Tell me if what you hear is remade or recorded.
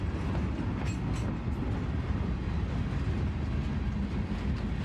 recorded